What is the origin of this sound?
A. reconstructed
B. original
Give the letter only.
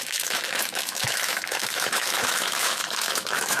A